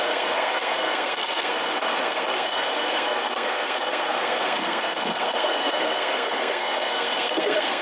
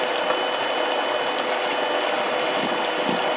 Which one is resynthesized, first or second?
first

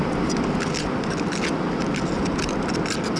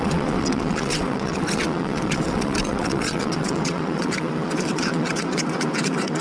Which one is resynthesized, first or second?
second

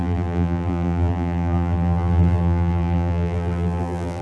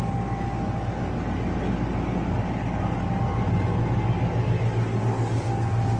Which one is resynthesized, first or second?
first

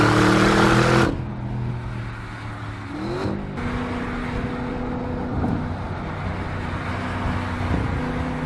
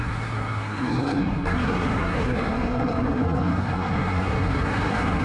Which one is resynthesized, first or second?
second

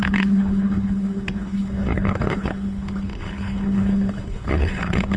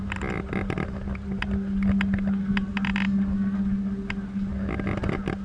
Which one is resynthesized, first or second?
first